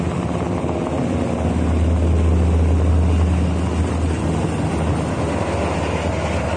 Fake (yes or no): no